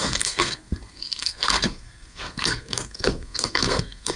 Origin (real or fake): fake